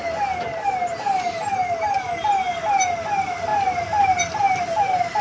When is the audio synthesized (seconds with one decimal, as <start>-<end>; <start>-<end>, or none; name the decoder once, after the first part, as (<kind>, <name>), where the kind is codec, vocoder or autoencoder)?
none